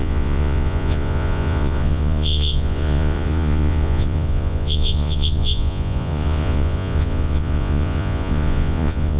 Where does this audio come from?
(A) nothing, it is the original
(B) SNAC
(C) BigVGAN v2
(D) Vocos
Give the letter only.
D